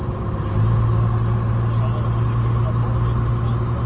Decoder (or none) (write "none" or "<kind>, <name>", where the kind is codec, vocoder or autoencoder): none